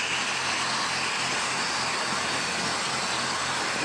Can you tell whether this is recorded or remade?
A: recorded